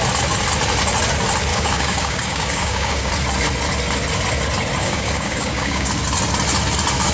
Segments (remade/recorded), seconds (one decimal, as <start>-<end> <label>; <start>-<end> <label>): 0.0-1.5 recorded; 1.5-3.1 remade; 3.1-4.8 recorded; 4.8-5.9 remade; 5.9-7.1 recorded